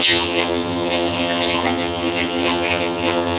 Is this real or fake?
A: fake